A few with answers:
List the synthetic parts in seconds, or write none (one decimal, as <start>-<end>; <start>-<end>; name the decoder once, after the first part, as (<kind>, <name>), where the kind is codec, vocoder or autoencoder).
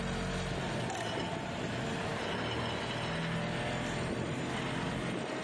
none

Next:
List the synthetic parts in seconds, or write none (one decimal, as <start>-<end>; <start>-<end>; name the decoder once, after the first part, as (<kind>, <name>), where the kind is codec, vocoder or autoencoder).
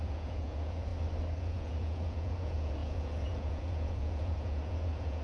0.0-0.9 (vocoder, Vocos); 1.4-5.2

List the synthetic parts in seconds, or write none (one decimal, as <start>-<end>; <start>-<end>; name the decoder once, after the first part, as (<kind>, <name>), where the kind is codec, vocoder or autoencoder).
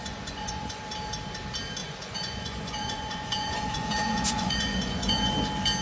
0.0-0.8 (vocoder, Vocos); 1.8-5.3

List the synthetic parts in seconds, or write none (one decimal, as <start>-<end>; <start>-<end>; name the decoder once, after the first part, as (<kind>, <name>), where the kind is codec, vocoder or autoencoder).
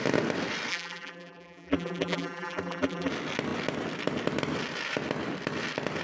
0.7-3.1 (vocoder, BigVGAN v2)